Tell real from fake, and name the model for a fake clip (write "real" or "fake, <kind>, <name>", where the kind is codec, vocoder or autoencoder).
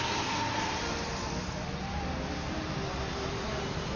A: real